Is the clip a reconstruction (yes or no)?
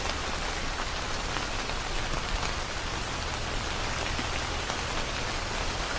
no